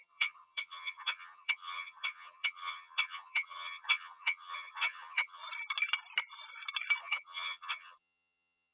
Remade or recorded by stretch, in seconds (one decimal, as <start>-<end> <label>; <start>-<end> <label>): 0.0-5.4 remade; 5.4-7.0 recorded; 7.0-8.7 remade